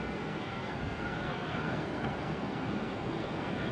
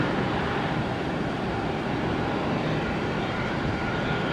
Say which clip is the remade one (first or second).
first